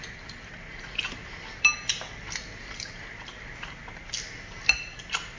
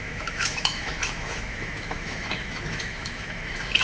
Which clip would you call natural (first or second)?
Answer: first